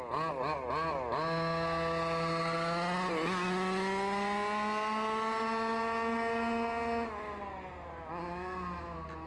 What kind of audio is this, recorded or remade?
recorded